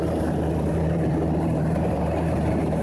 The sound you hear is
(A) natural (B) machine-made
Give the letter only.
B